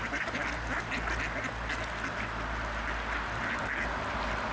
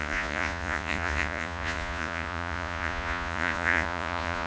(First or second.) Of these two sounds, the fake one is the second